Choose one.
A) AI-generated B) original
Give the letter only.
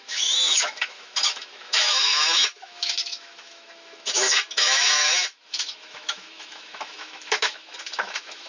A